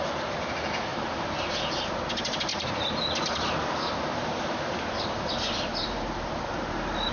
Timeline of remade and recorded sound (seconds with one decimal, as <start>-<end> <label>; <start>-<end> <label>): 0.0-0.9 recorded; 0.9-1.5 remade; 1.5-2.5 recorded; 2.5-7.1 remade